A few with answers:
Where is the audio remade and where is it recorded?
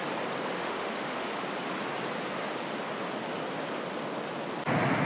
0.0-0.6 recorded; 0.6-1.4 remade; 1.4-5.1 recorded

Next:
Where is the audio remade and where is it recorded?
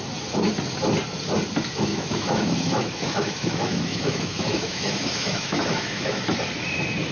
0.0-1.9 recorded; 1.9-6.2 remade; 6.2-7.1 recorded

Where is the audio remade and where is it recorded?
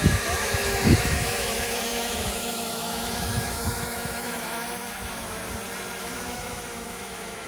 0.0-5.4 remade; 5.4-6.0 recorded; 6.0-7.5 remade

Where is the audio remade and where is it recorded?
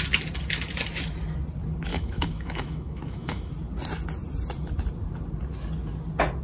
0.0-1.9 recorded; 1.9-3.5 remade; 3.5-6.4 recorded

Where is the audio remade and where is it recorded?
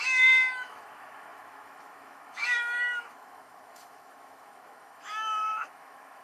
0.0-6.2 remade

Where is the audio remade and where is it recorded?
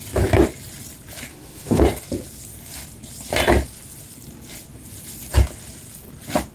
0.0-1.3 recorded; 1.3-1.8 remade; 1.8-6.5 recorded